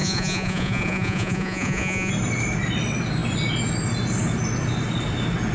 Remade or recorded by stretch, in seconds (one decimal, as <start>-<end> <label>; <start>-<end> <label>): 0.0-2.1 remade; 2.1-5.5 recorded